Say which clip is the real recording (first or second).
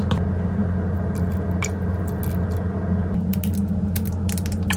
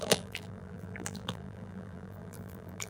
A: first